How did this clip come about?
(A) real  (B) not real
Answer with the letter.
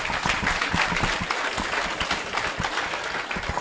A